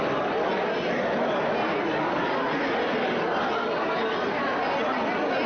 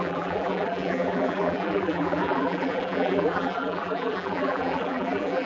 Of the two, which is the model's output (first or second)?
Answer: second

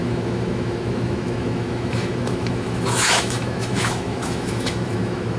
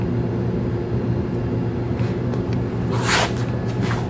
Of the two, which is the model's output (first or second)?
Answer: first